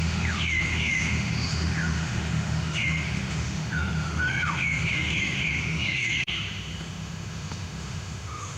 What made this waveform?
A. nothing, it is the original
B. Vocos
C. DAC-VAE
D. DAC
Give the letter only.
C